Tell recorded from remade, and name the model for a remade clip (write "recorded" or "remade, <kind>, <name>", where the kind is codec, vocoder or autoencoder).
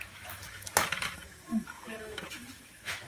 remade, autoencoder, DAC-VAE